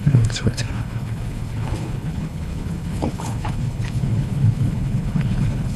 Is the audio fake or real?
fake